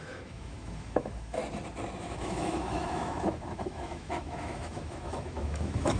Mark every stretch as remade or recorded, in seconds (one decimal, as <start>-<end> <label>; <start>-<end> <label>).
0.0-1.4 remade; 1.4-2.0 recorded; 2.0-6.0 remade